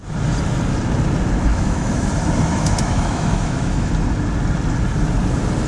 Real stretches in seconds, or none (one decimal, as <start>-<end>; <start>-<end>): 0.0-1.5; 2.1-2.5; 3.9-5.7